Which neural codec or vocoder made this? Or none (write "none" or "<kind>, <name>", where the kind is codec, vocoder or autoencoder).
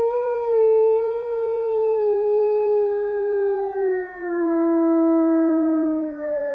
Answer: vocoder, BigVGAN v2